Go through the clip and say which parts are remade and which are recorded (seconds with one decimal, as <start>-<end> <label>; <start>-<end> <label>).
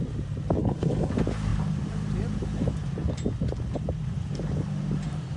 0.0-0.6 recorded; 0.6-1.1 remade; 1.1-5.4 recorded